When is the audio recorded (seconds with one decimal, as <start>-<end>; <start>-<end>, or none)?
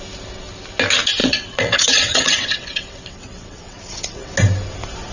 0.0-1.2; 4.3-5.1